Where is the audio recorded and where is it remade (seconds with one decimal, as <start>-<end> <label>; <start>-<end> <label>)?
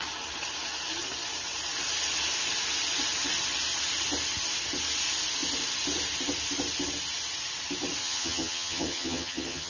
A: 0.0-8.0 recorded; 8.0-9.7 remade